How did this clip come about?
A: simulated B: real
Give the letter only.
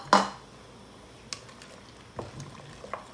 B